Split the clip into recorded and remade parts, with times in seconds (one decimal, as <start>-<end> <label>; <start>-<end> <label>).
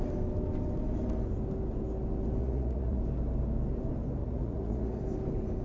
0.0-2.4 recorded; 2.4-3.0 remade; 3.0-4.2 recorded; 4.2-5.0 remade; 5.0-5.6 recorded